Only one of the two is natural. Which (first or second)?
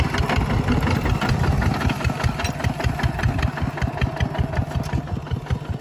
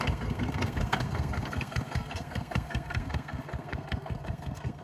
first